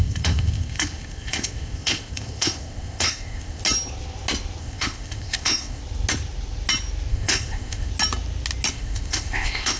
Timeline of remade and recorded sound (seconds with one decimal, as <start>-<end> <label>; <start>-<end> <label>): 0.0-3.6 remade; 3.6-4.6 recorded; 4.6-5.8 remade; 5.8-7.1 recorded; 7.1-7.9 remade; 7.9-8.7 recorded; 8.7-9.8 remade